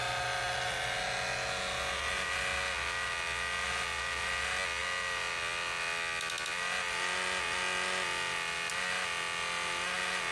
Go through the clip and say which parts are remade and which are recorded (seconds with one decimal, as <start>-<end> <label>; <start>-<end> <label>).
0.0-10.3 recorded